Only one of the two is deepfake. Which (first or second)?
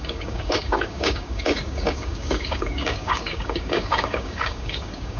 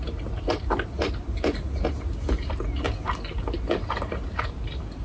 first